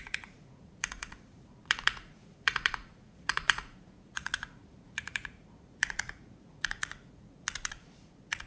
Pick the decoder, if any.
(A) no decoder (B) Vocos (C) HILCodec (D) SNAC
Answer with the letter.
B